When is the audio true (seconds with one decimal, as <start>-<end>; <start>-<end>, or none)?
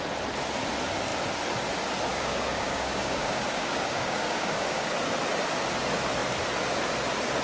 0.0-2.1; 4.9-7.4